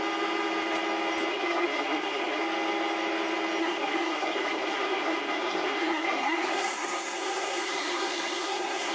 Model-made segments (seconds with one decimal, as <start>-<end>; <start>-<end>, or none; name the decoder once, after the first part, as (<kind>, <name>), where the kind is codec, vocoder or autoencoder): 1.3-2.4 (codec, SNAC); 3.6-8.9